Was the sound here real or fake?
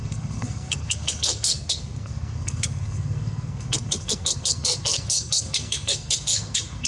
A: fake